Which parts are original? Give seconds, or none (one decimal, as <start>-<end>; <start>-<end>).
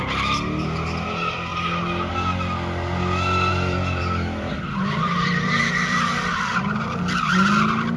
0.0-3.5; 7.0-8.0